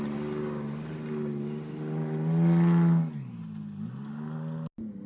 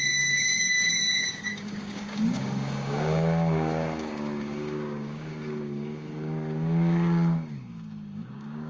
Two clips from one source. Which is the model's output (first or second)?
second